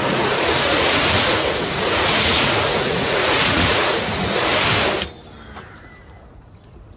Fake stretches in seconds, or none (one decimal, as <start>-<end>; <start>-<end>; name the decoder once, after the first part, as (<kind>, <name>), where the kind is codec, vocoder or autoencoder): 0.0-4.5 (vocoder, Vocos); 6.3-7.0